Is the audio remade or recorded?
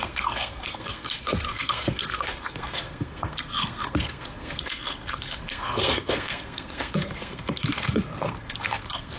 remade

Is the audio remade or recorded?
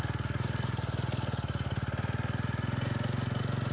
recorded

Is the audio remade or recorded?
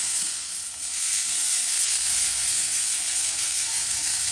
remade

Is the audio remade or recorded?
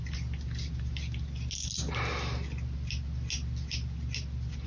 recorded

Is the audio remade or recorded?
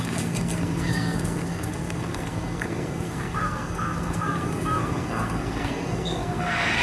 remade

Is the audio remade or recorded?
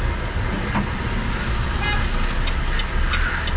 recorded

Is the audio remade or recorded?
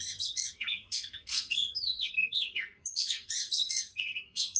remade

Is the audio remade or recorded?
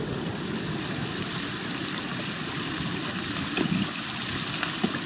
recorded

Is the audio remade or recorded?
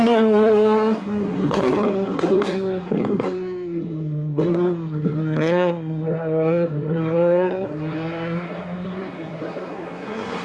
remade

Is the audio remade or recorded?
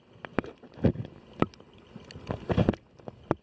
recorded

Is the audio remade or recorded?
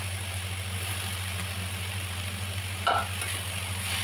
recorded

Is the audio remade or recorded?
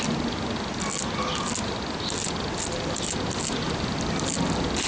recorded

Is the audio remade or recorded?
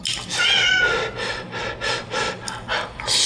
recorded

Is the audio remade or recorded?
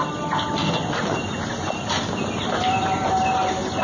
recorded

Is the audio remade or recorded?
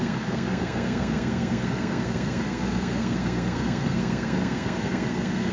remade